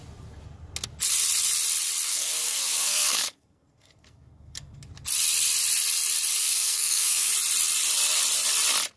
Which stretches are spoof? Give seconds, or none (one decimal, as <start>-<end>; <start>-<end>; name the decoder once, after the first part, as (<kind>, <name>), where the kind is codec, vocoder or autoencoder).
2.1-4.8 (codec, SNAC); 6.4-7.3